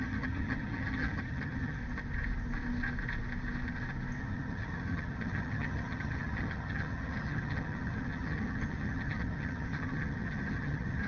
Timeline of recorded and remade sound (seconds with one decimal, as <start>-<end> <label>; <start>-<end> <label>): 0.0-1.8 remade; 1.8-4.2 recorded; 4.2-11.1 remade